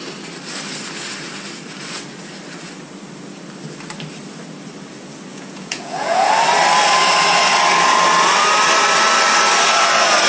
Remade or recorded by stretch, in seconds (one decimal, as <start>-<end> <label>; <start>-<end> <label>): 0.0-5.3 recorded; 5.3-6.3 remade; 6.3-10.3 recorded